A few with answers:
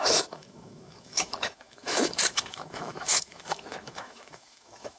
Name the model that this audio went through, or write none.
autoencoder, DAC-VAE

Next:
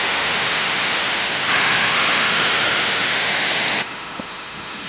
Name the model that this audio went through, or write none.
autoencoder, DAC-VAE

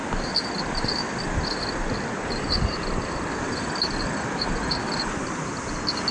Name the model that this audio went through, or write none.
none